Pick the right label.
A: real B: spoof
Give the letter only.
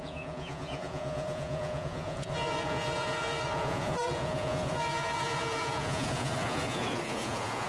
B